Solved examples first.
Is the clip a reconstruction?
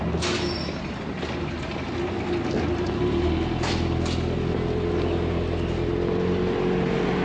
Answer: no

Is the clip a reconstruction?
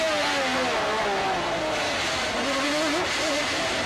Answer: no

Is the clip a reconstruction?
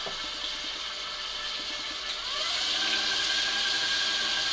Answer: no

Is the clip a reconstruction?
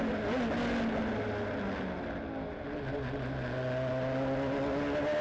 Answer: no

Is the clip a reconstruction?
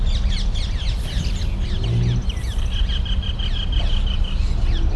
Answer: no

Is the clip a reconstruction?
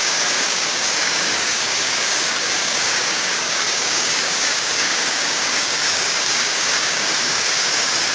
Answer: yes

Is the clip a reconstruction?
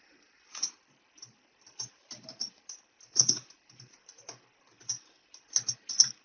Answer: no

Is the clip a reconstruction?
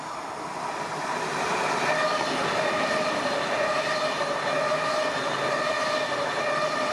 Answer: no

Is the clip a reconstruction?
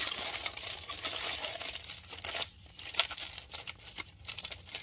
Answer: no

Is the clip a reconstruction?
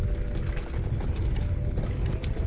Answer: no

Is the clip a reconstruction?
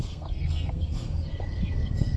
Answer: yes